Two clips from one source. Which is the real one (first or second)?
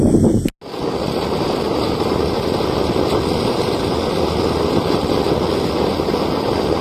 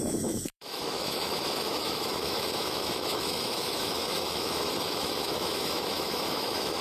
first